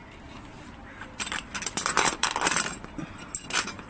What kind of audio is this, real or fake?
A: fake